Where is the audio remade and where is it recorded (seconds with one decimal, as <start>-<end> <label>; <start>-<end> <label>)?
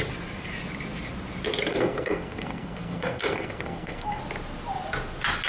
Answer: 0.0-1.7 recorded; 1.7-4.2 remade; 4.2-5.5 recorded